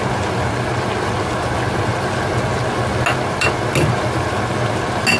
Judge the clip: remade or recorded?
recorded